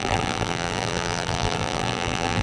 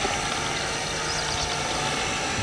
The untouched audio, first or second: second